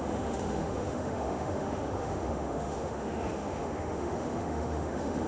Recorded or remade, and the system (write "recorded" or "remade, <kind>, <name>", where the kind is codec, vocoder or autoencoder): remade, autoencoder, DAC-VAE